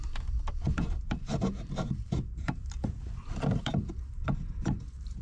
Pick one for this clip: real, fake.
fake